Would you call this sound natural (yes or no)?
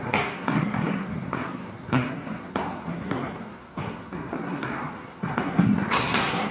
no